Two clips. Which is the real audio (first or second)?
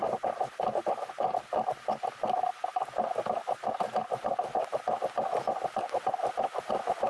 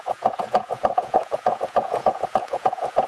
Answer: first